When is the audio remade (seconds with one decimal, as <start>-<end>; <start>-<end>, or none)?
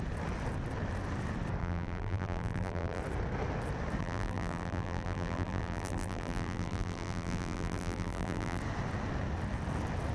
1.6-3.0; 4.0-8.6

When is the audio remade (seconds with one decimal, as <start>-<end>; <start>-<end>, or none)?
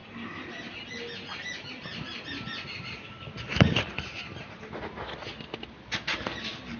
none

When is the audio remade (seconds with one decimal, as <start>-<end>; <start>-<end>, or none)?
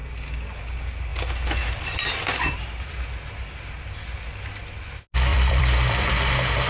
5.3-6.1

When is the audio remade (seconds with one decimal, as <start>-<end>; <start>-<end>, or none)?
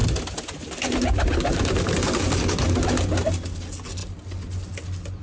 none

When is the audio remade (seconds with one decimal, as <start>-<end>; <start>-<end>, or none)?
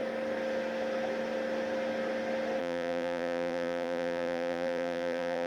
2.6-5.5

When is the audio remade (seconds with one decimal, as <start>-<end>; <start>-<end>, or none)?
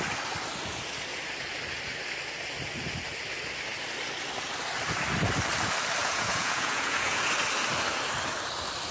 6.0-7.3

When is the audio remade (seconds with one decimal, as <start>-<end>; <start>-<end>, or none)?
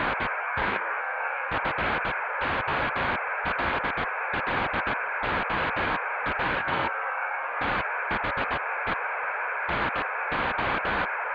0.4-1.5; 6.6-7.6